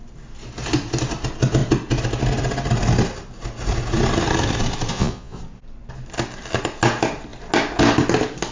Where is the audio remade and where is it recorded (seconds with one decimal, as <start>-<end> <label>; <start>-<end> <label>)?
0.0-4.9 recorded; 4.9-5.4 remade; 5.4-8.5 recorded